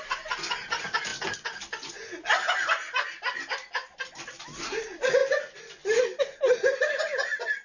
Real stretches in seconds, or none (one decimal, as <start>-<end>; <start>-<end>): 0.0-7.6